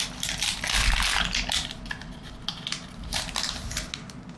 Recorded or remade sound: recorded